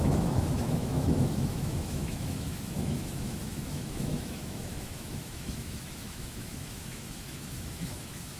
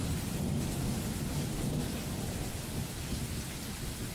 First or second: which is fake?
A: first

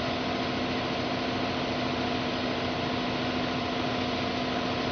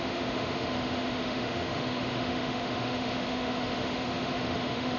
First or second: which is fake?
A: second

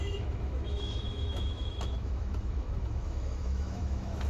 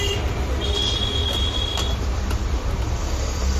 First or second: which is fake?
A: first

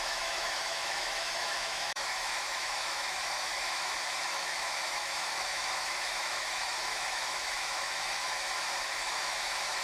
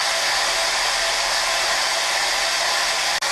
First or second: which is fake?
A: first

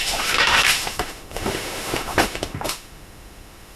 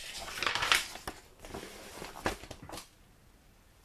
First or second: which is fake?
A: first